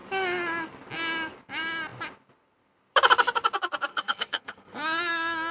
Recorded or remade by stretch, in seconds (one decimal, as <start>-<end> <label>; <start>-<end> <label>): 0.0-3.9 recorded; 3.9-5.5 remade